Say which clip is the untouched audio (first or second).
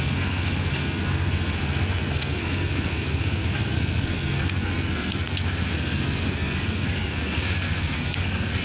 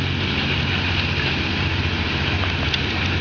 second